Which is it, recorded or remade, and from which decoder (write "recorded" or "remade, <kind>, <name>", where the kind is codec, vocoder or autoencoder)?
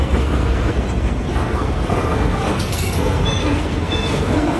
remade, codec, SNAC